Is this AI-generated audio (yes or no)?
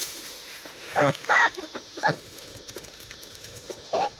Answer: yes